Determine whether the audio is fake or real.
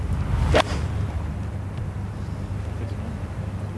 real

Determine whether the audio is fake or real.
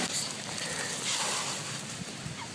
real